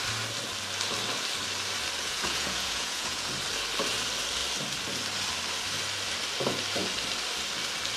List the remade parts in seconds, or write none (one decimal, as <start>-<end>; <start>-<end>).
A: 2.0-3.3